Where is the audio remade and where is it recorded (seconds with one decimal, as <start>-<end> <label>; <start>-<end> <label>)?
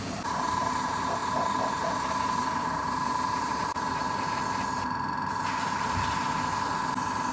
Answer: 0.0-1.2 remade; 1.2-2.1 recorded; 2.1-4.0 remade; 4.0-7.3 recorded